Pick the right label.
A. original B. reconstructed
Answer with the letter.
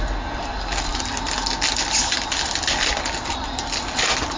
A